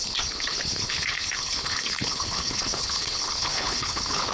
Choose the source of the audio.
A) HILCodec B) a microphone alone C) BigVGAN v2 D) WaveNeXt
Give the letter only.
A